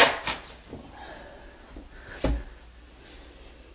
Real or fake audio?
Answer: real